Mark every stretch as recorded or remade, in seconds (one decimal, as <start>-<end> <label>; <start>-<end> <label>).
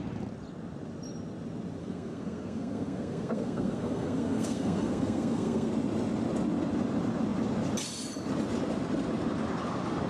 0.0-1.8 recorded; 1.8-5.7 remade; 5.7-10.1 recorded